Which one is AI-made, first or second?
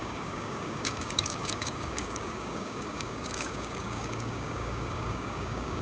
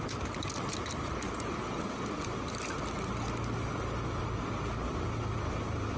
first